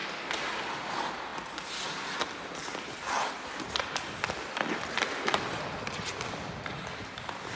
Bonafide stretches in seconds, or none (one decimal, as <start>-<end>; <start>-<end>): 0.0-7.6